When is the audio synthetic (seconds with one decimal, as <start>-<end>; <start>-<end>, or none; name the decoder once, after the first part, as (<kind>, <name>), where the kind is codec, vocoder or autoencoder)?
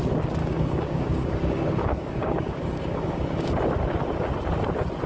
0.4-3.5 (codec, DAC)